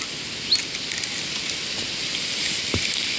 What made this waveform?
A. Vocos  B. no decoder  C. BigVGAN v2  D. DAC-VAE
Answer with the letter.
B